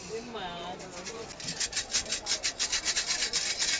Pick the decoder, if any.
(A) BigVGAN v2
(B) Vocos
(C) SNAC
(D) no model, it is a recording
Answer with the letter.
D